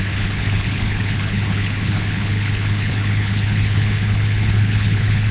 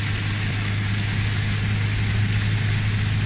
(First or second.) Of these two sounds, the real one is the second